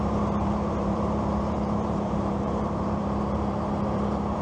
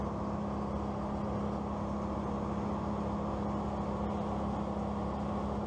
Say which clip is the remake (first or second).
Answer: first